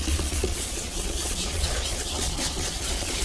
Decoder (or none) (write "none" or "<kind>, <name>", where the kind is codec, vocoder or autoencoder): vocoder, Vocos